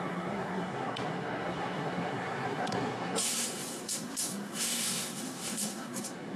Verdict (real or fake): fake